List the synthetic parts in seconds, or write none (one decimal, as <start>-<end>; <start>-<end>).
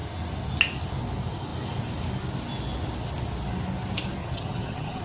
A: 4.2-5.0